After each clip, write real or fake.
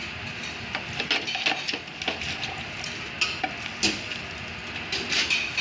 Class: real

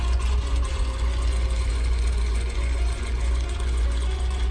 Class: fake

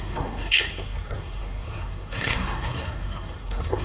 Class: fake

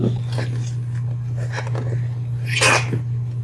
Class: real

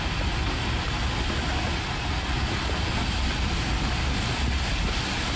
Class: real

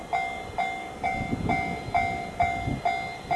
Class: real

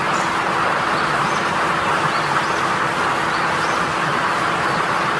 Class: real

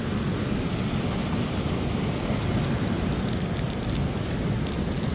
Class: real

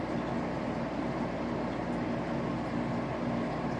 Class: fake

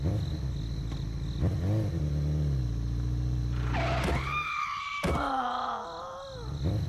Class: real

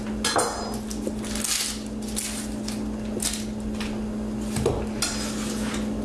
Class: real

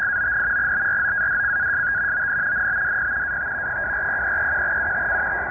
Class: real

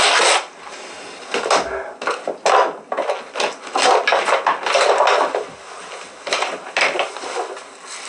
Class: real